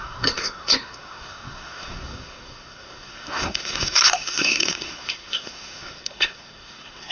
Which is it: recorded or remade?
remade